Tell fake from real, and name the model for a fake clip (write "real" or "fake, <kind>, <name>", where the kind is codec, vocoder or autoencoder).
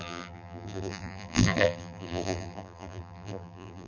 fake, vocoder, BigVGAN v2